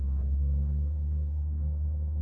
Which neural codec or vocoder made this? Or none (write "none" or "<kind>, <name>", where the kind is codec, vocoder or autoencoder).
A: codec, SNAC